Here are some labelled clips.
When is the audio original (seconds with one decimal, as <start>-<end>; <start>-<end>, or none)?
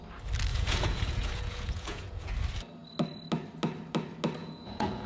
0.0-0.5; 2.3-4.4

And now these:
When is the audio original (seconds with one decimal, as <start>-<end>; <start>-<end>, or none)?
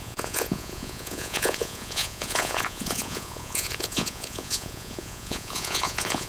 none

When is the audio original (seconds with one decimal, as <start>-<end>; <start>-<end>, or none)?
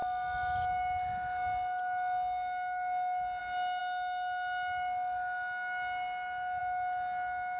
0.0-7.6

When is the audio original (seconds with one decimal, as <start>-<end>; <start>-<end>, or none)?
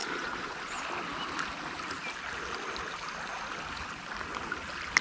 0.6-5.0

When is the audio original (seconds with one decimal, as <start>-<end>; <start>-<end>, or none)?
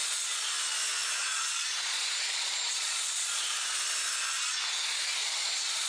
0.5-1.2; 3.7-5.2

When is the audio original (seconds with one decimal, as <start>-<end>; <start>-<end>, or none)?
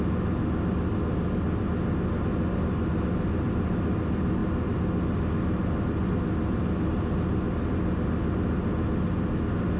0.0-9.8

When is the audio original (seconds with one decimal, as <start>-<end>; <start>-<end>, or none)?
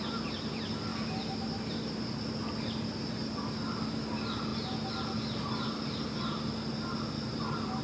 0.0-7.8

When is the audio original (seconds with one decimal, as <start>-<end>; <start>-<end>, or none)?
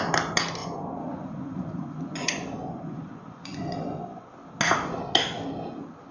0.0-0.6; 4.3-6.1